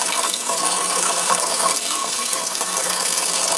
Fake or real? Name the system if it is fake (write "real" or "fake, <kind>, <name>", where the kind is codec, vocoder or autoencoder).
fake, codec, SNAC